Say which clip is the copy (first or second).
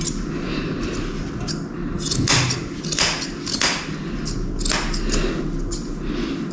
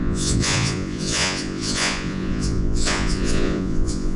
second